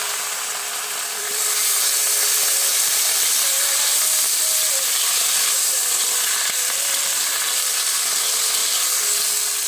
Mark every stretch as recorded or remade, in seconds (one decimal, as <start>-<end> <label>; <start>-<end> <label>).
0.0-8.6 remade; 8.6-9.7 recorded